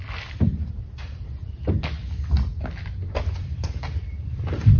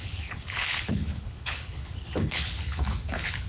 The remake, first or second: second